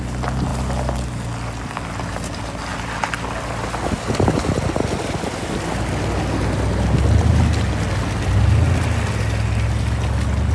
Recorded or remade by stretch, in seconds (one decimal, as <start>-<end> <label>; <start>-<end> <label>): 0.0-10.5 recorded